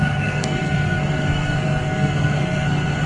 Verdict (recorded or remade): remade